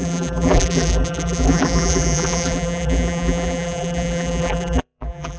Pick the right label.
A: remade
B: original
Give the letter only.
A